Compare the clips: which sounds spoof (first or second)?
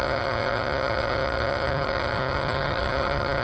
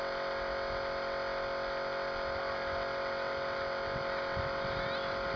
first